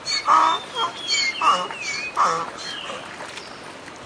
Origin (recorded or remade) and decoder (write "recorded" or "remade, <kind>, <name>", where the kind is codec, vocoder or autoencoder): recorded